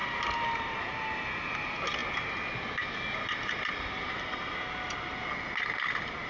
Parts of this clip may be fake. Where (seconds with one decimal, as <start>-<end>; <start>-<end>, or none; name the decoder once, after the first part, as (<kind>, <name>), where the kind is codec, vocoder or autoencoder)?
none